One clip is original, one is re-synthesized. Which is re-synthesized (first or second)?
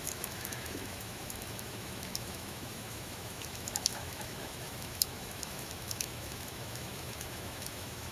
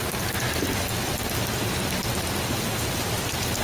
first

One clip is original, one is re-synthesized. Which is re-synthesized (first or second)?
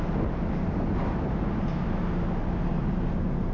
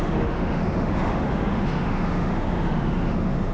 second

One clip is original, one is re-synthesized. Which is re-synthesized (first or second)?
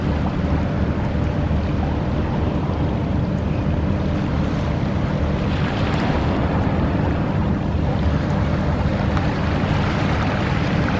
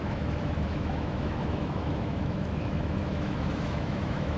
second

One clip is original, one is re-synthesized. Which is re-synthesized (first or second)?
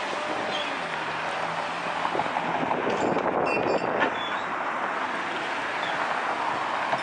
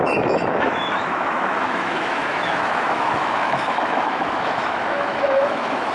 second